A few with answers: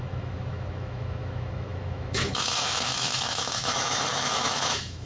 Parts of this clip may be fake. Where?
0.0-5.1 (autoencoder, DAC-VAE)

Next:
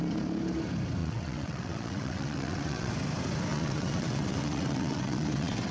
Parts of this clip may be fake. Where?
1.0-2.9 (vocoder, WaveNeXt); 3.5-5.7

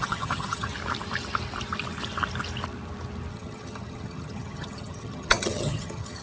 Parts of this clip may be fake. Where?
0.0-0.7 (vocoder, HiFi-GAN); 3.3-6.2

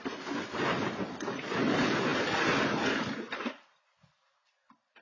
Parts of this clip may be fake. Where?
none